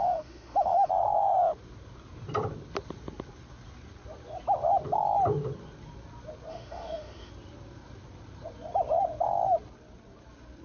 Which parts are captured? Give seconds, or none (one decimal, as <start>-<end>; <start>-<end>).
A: 0.9-6.5; 7.3-10.6